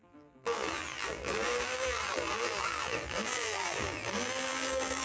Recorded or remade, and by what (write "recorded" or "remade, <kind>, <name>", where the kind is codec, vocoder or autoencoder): remade, vocoder, BigVGAN v2